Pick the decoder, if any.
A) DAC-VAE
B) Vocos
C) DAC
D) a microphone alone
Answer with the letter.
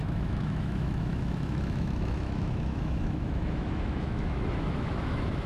A